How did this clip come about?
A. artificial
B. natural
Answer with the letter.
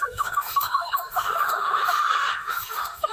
A